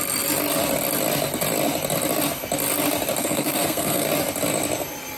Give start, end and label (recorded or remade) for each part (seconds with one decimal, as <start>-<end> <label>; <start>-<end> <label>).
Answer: 0.0-3.2 recorded; 3.2-4.1 remade; 4.1-5.2 recorded